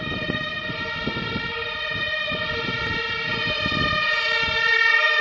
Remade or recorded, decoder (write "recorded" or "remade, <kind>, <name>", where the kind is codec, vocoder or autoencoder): remade, vocoder, BigVGAN v2